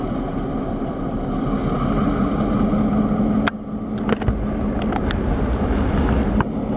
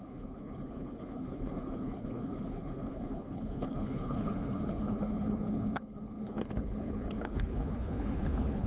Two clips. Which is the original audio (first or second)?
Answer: first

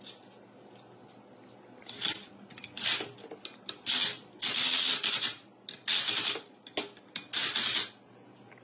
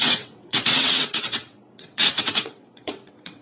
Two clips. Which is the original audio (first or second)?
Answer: first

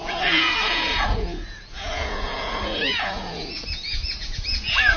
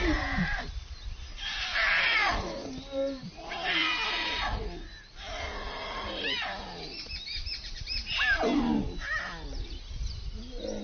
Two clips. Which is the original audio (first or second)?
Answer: second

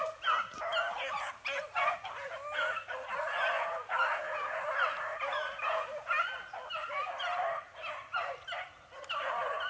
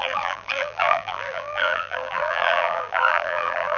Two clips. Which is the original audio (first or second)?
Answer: first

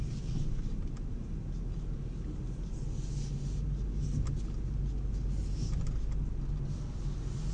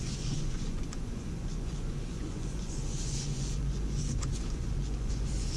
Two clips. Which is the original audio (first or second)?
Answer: first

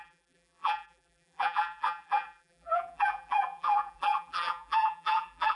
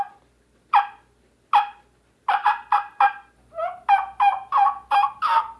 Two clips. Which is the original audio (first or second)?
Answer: second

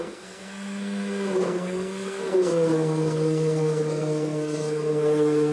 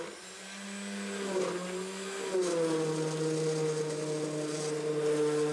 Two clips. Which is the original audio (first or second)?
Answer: second